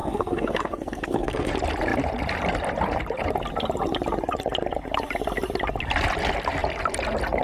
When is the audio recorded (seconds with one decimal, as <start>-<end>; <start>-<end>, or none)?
1.5-7.4